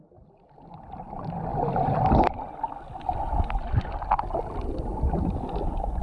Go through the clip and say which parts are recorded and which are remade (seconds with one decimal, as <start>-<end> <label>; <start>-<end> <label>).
0.0-1.5 recorded; 1.5-2.1 remade; 2.1-6.0 recorded